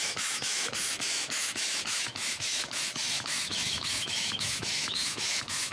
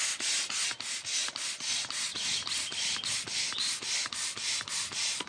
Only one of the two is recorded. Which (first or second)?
second